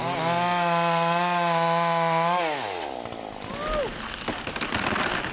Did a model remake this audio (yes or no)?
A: no